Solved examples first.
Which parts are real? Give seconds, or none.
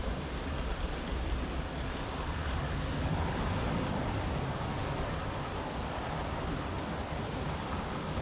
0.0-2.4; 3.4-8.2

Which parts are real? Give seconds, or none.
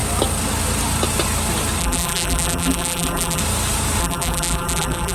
0.0-1.8; 3.4-4.0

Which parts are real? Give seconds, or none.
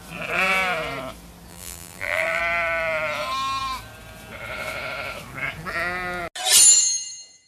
0.0-1.5; 2.4-7.5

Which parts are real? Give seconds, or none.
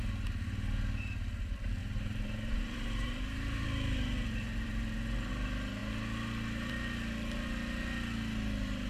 0.0-1.8; 5.3-8.9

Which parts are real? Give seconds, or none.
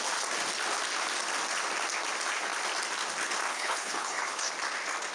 0.0-3.5; 4.5-5.1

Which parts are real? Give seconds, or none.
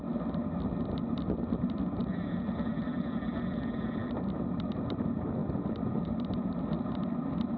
0.0-7.6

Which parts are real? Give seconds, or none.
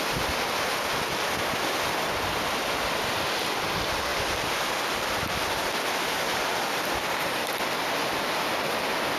0.0-9.2